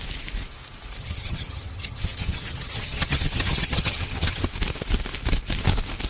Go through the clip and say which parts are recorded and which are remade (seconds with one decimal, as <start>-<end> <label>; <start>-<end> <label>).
0.0-1.0 recorded; 1.0-4.5 remade; 4.5-6.1 recorded